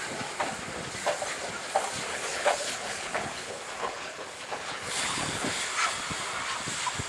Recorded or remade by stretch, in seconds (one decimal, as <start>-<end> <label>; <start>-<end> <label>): 0.0-2.1 recorded; 2.1-5.6 remade; 5.6-7.1 recorded